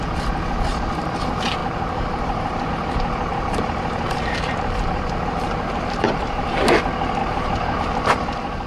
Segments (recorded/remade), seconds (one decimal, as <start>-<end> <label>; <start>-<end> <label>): 0.0-1.6 recorded; 1.6-2.7 remade; 2.7-3.3 recorded; 3.3-6.5 remade; 6.5-7.2 recorded; 7.2-7.8 remade; 7.8-8.7 recorded